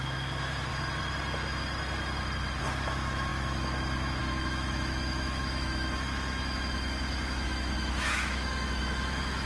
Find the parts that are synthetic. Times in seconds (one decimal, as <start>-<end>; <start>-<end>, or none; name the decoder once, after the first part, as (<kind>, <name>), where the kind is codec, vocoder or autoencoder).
0.0-0.7 (autoencoder, DAC-VAE); 2.6-9.5